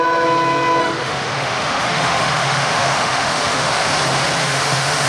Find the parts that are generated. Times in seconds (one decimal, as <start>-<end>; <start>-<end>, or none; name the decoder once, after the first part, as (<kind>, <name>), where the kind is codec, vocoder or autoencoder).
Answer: 0.8-3.9 (autoencoder, DAC-VAE); 4.4-5.1